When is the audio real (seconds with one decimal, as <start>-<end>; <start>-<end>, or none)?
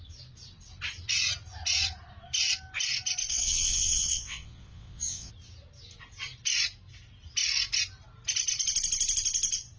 0.0-3.3; 5.3-9.8